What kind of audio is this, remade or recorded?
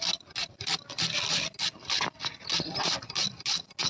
recorded